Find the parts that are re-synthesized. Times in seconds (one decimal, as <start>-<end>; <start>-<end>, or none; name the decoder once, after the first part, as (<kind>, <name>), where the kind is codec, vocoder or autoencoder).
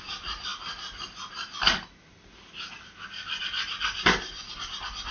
none